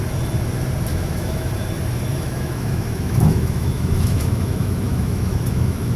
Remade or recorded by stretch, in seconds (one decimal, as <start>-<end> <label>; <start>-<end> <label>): 0.0-0.9 recorded; 0.9-1.5 remade; 1.5-2.1 recorded; 2.1-6.0 remade